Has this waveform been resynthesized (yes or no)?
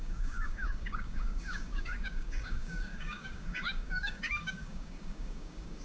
yes